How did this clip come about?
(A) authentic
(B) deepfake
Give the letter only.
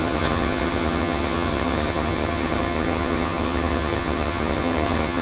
B